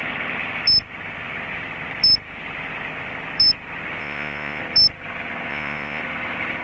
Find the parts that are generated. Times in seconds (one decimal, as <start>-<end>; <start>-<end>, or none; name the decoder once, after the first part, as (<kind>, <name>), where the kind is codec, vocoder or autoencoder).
4.0-4.6 (vocoder, Vocos); 5.5-6.0